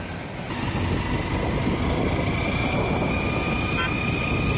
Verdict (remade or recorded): recorded